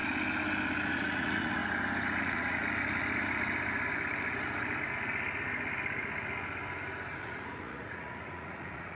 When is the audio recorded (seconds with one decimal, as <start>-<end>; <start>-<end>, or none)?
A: 0.0-0.9; 1.6-2.2; 2.6-7.1